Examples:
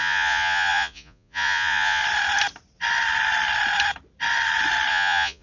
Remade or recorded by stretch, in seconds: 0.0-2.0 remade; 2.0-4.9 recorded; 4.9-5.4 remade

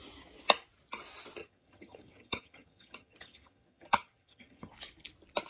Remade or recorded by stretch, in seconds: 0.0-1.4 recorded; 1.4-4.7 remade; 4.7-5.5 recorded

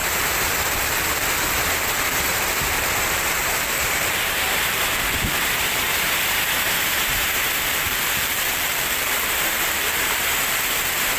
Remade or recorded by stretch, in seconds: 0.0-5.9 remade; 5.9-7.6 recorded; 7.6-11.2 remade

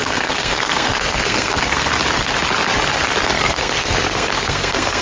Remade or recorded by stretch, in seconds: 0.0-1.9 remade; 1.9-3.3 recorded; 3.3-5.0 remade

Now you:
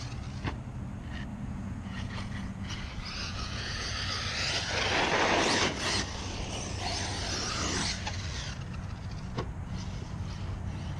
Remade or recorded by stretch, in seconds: 0.0-1.3 recorded; 1.3-2.7 remade; 2.7-3.2 recorded; 3.2-3.9 remade; 3.9-11.0 recorded

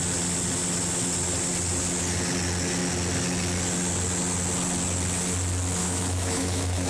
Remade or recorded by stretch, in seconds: 0.0-5.8 recorded; 5.8-6.9 remade

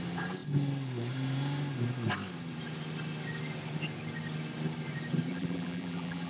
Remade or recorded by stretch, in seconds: 0.0-5.3 recorded; 5.3-6.3 remade

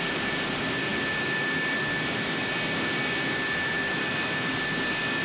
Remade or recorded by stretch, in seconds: 0.0-5.2 recorded